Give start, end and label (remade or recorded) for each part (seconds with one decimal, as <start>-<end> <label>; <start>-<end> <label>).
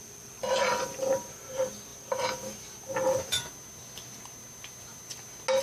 0.0-1.1 remade; 1.1-5.6 recorded